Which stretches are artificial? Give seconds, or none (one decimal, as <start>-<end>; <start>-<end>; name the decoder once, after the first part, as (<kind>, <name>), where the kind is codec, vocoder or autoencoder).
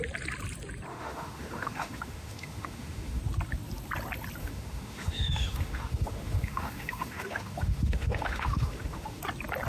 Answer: 0.9-3.2 (autoencoder, DAC-VAE); 4.4-9.2